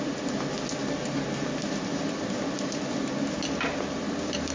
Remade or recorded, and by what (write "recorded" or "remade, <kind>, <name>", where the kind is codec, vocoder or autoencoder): recorded